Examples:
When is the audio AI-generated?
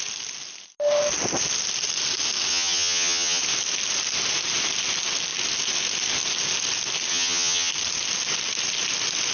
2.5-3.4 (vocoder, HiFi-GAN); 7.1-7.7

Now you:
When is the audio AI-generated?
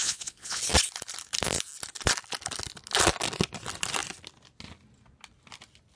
0.0-0.6 (vocoder, Vocos)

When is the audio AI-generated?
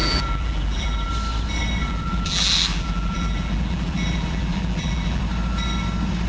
0.0-1.1 (vocoder, BigVGAN v2); 1.8-5.2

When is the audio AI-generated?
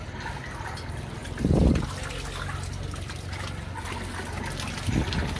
none